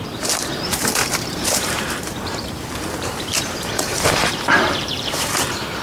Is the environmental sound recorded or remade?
remade